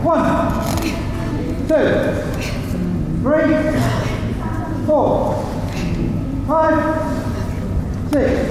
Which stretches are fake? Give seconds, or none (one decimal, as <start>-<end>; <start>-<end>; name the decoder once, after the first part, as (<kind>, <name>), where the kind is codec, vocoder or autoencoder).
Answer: none